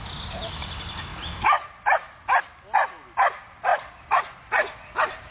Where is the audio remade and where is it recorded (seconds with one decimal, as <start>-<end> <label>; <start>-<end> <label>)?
0.0-1.1 recorded; 1.1-2.4 remade; 2.4-5.3 recorded

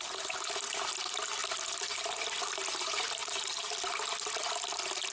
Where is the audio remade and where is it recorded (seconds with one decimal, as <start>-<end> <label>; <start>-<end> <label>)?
0.0-5.1 recorded

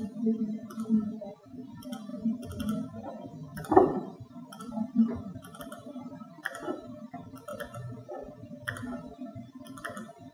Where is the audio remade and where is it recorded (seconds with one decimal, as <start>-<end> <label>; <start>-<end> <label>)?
0.0-3.5 recorded; 3.5-6.3 remade; 6.3-10.3 recorded

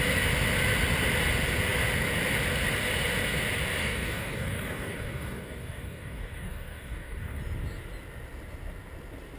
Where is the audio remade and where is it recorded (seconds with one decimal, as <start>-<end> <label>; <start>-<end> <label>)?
0.0-3.8 recorded; 3.8-7.4 remade; 7.4-9.4 recorded

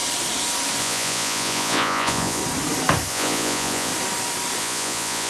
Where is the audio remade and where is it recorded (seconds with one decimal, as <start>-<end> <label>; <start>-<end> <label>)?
0.0-0.8 recorded; 0.8-2.4 remade; 2.4-3.1 recorded; 3.1-3.9 remade; 3.9-4.6 recorded; 4.6-5.3 remade

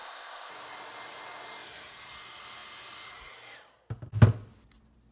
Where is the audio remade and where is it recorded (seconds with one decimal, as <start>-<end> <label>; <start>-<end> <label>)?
0.0-0.5 remade; 0.5-5.1 recorded

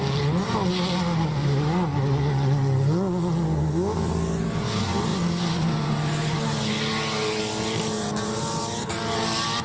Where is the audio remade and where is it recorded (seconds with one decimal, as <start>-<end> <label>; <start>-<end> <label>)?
0.0-9.6 recorded